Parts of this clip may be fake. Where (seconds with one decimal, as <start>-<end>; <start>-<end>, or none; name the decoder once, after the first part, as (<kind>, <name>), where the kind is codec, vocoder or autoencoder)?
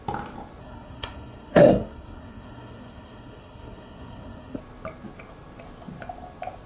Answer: 0.6-4.6 (codec, SNAC)